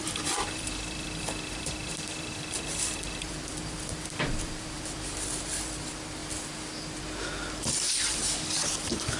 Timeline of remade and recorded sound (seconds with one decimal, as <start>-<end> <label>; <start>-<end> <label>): 0.0-6.2 remade; 6.2-7.7 recorded; 7.7-9.2 remade